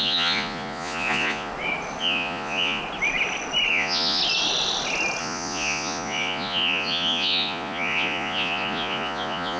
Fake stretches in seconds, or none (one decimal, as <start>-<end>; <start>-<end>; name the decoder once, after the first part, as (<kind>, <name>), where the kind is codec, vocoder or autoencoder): 0.0-1.5 (vocoder, Vocos); 2.0-2.8; 3.7-4.2; 5.2-9.6